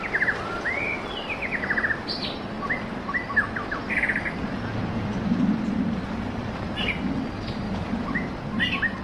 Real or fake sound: real